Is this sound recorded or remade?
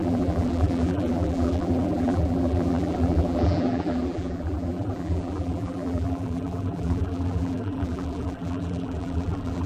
remade